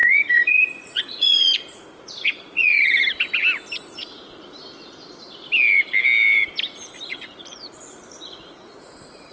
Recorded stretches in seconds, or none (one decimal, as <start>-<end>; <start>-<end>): 3.0-7.1